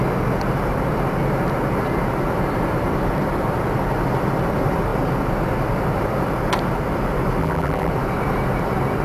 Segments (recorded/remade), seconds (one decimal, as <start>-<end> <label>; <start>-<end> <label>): 0.0-7.4 recorded; 7.4-7.9 remade; 7.9-9.0 recorded